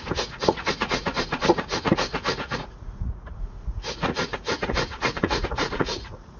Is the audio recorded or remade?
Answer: remade